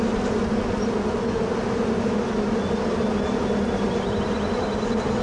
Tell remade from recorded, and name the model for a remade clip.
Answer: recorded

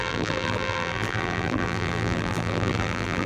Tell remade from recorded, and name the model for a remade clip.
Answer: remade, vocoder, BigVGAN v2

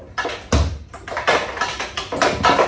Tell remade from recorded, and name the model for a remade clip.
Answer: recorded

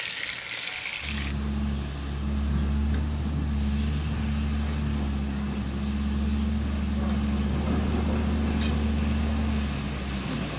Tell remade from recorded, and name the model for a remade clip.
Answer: recorded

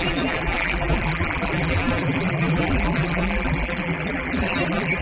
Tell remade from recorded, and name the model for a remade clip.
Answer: remade, vocoder, BigVGAN v2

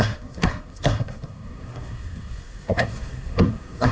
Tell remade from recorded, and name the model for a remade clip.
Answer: remade, codec, SNAC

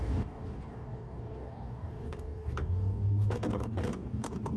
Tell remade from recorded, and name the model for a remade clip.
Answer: remade, codec, DAC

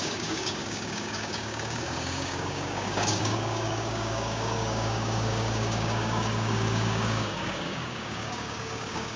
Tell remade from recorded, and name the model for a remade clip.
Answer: remade, codec, DAC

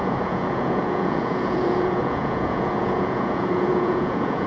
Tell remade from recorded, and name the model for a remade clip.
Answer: remade, vocoder, Vocos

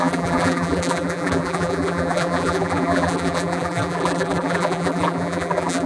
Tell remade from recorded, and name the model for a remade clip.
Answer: remade, vocoder, BigVGAN v2